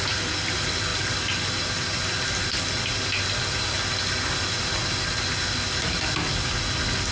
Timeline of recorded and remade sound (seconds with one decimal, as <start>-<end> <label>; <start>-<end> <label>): 0.0-7.1 recorded

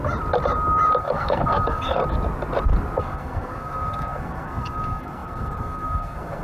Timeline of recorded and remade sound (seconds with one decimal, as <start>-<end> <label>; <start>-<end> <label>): 0.0-1.0 recorded; 1.0-2.0 remade; 2.0-3.0 recorded; 3.0-6.4 remade

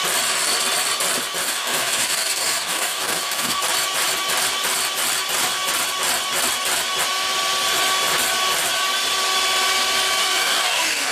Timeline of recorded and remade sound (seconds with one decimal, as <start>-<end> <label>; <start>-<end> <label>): 0.0-1.4 recorded; 1.4-3.6 remade; 3.6-10.2 recorded; 10.2-11.1 remade

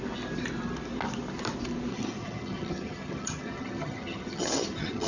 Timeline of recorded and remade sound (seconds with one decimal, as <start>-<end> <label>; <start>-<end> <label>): 0.0-1.9 recorded; 1.9-5.1 remade

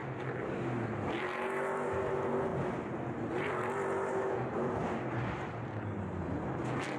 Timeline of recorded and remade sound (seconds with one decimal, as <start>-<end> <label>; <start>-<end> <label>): 0.0-7.0 recorded